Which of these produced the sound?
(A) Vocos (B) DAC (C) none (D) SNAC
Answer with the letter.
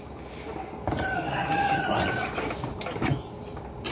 C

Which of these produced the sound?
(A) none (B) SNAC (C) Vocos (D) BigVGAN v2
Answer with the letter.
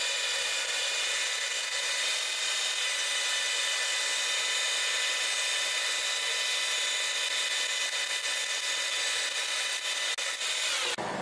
A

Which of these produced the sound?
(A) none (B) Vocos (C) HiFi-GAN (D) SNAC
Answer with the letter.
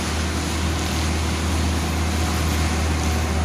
A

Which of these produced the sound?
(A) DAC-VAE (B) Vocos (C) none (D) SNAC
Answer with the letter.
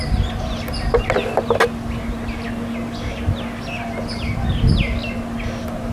C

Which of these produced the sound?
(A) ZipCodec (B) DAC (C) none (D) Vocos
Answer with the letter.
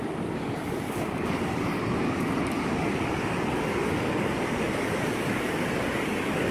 B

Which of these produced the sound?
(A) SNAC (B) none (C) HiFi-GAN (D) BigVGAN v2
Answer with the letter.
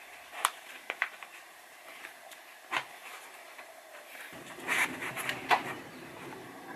D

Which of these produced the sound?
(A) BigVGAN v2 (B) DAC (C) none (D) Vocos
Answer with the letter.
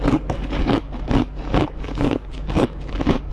B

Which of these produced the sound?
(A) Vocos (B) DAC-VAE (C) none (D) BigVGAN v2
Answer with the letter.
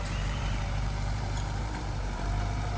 D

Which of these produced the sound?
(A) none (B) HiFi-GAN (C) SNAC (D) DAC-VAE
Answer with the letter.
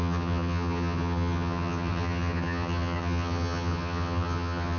B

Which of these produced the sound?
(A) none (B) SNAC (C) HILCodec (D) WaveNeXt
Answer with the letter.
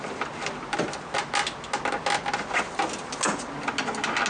A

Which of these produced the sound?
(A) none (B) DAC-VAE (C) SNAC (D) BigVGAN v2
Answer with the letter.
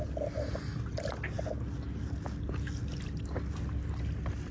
A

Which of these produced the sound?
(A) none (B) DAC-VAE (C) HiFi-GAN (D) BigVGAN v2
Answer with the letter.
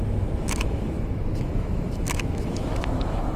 B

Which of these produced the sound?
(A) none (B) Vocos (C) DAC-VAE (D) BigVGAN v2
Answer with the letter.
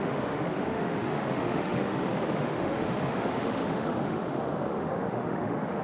C